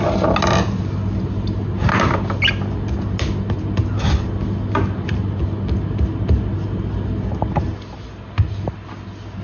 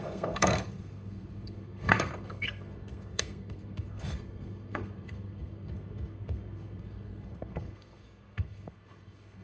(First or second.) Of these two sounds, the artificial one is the second